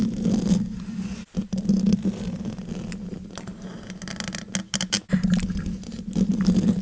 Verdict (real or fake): real